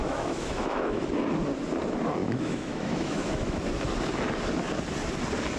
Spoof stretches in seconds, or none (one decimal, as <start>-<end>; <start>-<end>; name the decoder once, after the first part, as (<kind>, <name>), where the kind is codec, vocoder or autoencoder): 0.0-1.1 (autoencoder, DAC-VAE); 2.2-3.6